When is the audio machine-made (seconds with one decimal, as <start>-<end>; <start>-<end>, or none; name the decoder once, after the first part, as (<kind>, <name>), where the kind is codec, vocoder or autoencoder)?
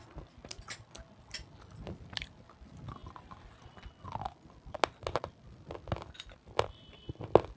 none